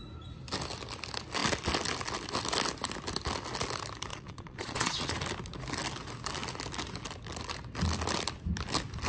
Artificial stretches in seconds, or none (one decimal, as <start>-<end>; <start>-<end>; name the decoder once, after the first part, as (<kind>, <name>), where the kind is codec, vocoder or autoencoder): 4.1-5.1 (vocoder, Vocos)